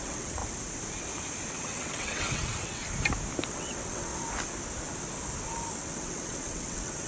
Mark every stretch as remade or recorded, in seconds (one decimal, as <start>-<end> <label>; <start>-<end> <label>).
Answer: 0.0-0.4 remade; 0.4-1.5 recorded; 1.5-2.8 remade; 2.8-3.5 recorded; 3.5-4.1 remade; 4.1-5.8 recorded; 5.8-7.1 remade